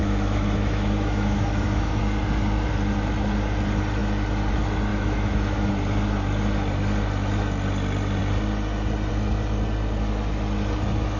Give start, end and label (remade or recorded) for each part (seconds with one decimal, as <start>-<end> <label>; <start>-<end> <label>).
0.0-2.0 remade; 2.0-4.9 recorded; 4.9-5.7 remade; 5.7-11.2 recorded